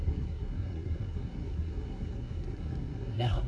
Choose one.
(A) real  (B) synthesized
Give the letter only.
B